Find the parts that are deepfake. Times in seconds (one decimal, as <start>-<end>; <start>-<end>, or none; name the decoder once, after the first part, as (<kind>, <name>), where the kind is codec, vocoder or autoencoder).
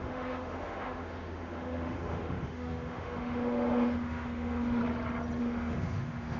0.0-4.8 (autoencoder, DAC-VAE); 5.4-6.4